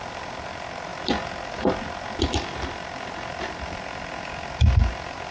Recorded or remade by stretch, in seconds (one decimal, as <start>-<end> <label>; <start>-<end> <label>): 0.0-5.3 recorded